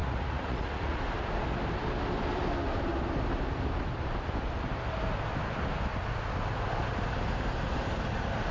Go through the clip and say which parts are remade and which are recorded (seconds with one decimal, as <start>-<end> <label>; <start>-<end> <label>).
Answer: 0.0-1.0 remade; 1.0-8.5 recorded